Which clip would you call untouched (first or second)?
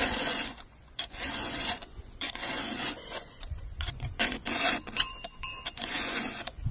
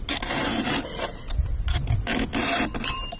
second